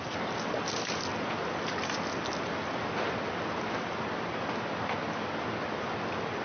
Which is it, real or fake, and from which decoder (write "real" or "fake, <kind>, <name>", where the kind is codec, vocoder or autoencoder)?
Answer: real